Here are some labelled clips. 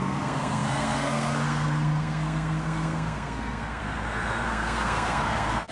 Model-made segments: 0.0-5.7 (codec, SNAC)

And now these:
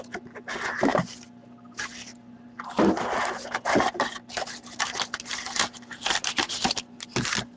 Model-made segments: none

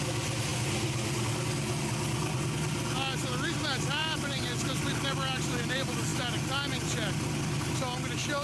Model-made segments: none

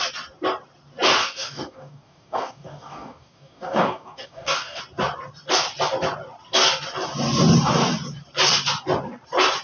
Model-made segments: 1.2-4.8 (codec, DAC)

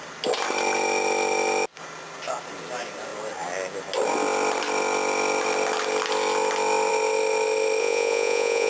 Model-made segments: 7.8-8.7 (vocoder, Vocos)

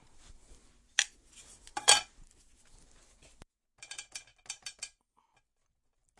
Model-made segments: none

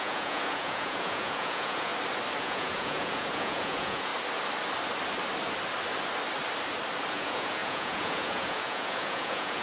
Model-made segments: 0.0-1.9 (vocoder, Vocos); 2.4-4.1; 7.1-9.6